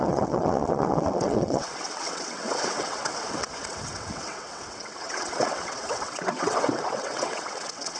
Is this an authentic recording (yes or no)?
no